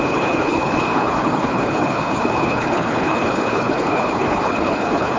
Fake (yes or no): yes